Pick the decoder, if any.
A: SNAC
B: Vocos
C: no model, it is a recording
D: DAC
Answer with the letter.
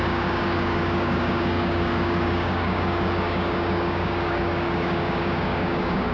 D